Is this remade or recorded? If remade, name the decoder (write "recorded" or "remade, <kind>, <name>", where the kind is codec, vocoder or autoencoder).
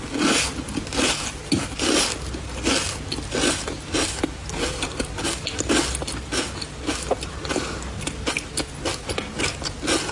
recorded